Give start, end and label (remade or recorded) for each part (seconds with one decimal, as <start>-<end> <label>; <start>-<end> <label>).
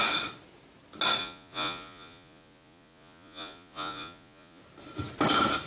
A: 0.0-1.2 recorded; 1.2-4.6 remade; 4.6-5.7 recorded